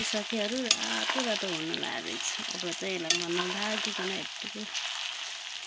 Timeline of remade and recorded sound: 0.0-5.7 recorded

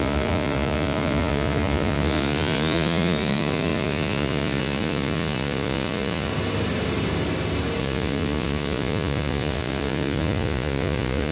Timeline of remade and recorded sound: 0.0-6.3 remade; 6.3-7.8 recorded; 7.8-11.3 remade

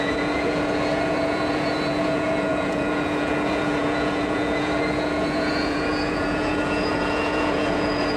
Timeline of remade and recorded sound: 0.0-8.2 remade